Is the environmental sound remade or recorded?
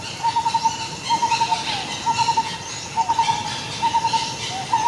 recorded